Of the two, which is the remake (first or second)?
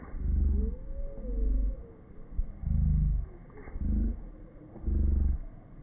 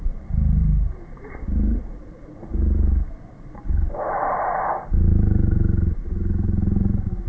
second